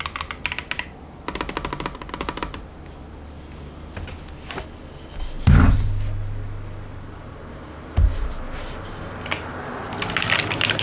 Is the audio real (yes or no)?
yes